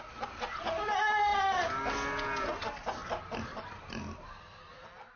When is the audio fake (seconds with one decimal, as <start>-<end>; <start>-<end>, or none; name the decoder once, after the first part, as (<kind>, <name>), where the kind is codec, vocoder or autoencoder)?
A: none